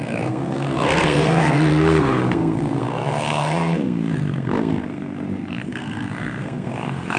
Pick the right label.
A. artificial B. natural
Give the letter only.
A